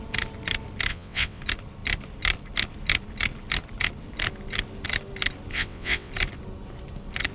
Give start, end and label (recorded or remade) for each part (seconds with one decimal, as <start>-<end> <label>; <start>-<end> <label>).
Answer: 0.0-0.9 recorded; 0.9-1.4 remade; 1.4-5.5 recorded; 5.5-6.1 remade; 6.1-7.3 recorded